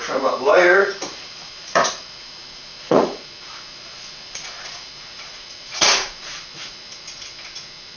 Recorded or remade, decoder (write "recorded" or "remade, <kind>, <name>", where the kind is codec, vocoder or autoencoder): remade, vocoder, Vocos